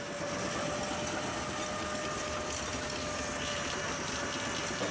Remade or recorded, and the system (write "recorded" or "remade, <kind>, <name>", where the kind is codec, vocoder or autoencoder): recorded